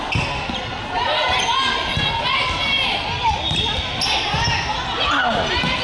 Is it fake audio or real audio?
real